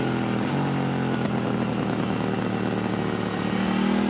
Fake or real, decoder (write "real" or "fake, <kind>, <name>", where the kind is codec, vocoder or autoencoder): real